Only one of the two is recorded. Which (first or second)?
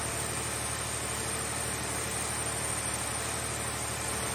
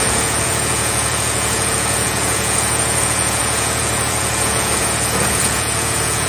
first